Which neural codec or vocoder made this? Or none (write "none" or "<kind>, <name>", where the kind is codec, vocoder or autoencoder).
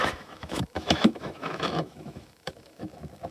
autoencoder, DAC-VAE